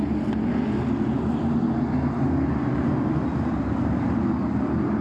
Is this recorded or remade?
recorded